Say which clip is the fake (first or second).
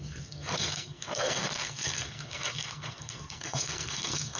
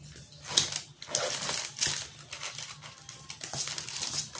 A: first